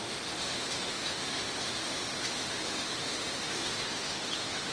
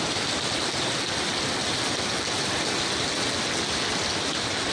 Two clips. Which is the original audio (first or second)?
second